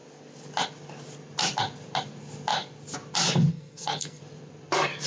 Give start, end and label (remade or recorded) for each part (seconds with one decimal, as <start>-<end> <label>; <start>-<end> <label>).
0.0-3.5 recorded; 3.5-4.2 remade; 4.2-5.1 recorded